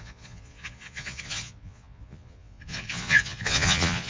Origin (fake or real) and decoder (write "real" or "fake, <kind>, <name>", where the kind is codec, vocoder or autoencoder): fake, vocoder, Vocos